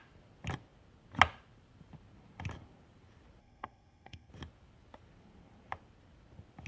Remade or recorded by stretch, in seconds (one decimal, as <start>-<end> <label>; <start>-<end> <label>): 0.0-3.4 recorded; 3.4-4.3 remade; 4.3-6.7 recorded

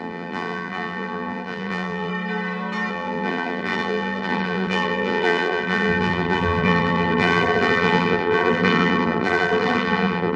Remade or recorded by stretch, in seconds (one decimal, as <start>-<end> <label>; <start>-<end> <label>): 0.0-2.1 remade; 2.1-2.9 recorded; 2.9-10.4 remade

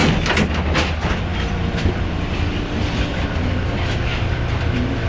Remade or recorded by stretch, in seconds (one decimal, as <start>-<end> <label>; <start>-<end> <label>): 0.0-1.3 recorded; 1.3-3.0 remade; 3.0-4.1 recorded; 4.1-5.1 remade

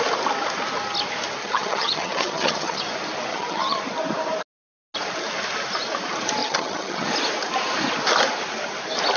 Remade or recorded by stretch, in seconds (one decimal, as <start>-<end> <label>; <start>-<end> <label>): 0.0-1.4 recorded; 1.4-2.8 remade; 2.8-3.3 recorded; 3.3-3.8 remade; 3.8-6.4 recorded; 6.4-7.1 remade; 7.1-9.2 recorded

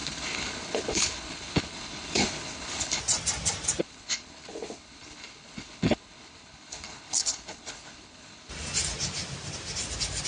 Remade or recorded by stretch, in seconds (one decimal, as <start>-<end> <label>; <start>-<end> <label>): 0.0-3.0 remade; 3.0-3.8 recorded; 3.8-8.5 remade; 8.5-10.3 recorded

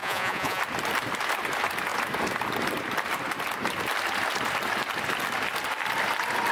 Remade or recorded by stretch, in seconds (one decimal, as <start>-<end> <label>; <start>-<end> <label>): 0.0-0.6 remade; 0.6-6.5 recorded